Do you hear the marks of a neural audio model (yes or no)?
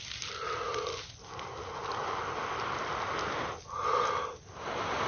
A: no